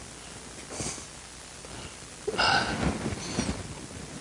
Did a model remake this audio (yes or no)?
no